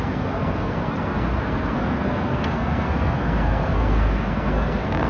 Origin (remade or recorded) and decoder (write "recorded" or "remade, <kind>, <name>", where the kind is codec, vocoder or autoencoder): remade, codec, SNAC